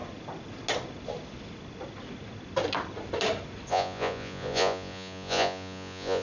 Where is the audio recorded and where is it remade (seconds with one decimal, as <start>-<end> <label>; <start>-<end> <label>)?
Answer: 0.0-3.7 recorded; 3.7-6.2 remade